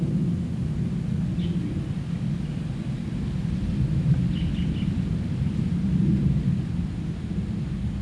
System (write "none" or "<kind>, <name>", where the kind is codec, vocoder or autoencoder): none